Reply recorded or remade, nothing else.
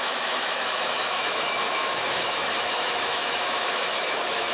remade